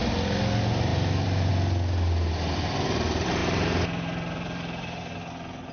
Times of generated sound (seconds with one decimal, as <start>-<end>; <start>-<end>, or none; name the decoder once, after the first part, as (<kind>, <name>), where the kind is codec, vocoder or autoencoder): 0.9-1.5 (vocoder, BigVGAN v2); 3.4-5.2